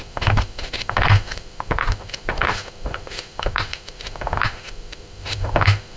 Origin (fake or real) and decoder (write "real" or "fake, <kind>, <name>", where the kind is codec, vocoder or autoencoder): fake, autoencoder, DAC-VAE